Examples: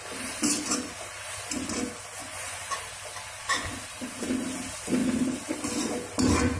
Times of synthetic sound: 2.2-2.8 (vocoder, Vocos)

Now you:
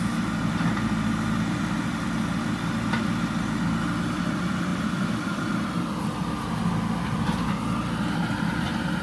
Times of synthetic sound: none